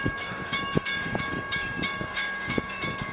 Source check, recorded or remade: remade